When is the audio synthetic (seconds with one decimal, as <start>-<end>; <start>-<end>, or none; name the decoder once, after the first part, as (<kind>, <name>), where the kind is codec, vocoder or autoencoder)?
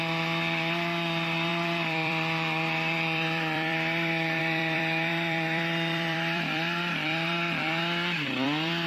0.0-8.9 (vocoder, BigVGAN v2)